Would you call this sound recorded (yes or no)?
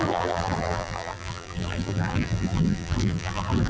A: no